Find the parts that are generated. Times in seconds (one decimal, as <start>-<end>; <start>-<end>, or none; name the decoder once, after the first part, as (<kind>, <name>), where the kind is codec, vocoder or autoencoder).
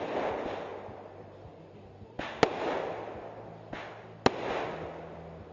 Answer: none